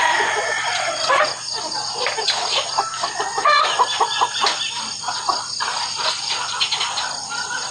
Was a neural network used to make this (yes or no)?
no